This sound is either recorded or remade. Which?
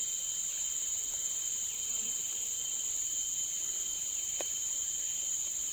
remade